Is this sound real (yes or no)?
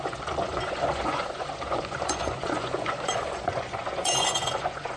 no